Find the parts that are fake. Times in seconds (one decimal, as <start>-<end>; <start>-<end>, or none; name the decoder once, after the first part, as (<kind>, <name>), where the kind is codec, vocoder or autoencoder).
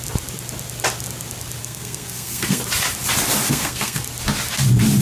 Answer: 1.6-2.6 (codec, SNAC); 3.5-4.0